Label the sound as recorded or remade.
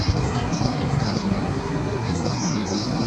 remade